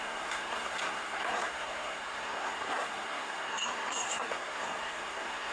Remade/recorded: remade